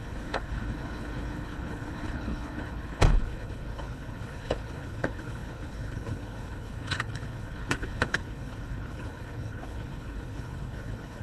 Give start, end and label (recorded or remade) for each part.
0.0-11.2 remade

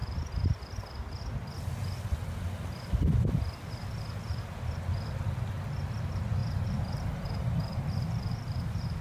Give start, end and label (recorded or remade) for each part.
0.0-6.4 recorded; 6.4-9.0 remade

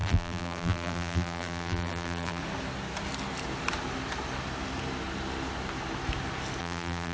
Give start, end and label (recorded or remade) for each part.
0.0-2.4 remade; 2.4-6.6 recorded; 6.6-7.1 remade

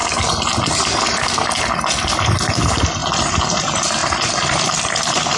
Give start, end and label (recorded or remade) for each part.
0.0-1.6 recorded; 1.6-3.0 remade; 3.0-3.5 recorded; 3.5-5.4 remade

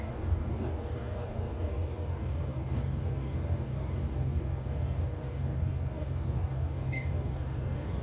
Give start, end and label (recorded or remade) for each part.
0.0-8.0 remade

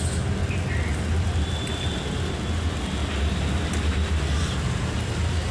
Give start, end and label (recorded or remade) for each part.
0.0-5.5 recorded